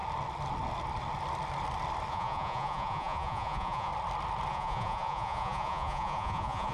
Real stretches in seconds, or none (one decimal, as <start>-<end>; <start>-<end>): 0.0-2.1; 3.9-4.5